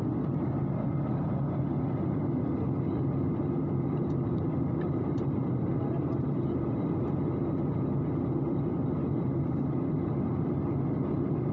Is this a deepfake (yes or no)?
no